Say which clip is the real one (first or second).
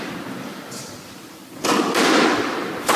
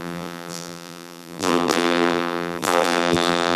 first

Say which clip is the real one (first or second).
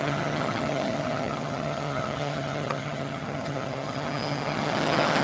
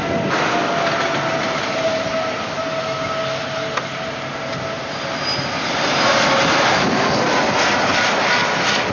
second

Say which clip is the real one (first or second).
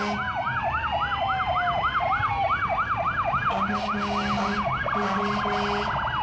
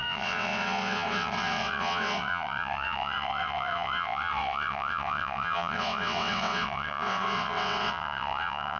first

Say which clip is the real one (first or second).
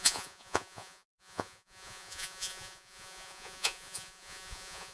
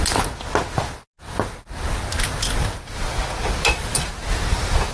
second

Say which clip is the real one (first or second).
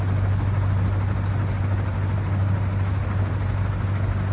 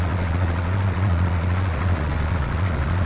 first